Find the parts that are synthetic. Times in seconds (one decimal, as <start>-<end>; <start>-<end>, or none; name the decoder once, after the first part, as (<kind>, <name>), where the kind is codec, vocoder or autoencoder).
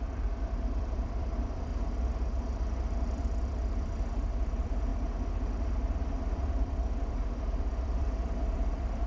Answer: 0.0-1.7 (vocoder, BigVGAN v2); 2.8-4.9; 6.1-9.1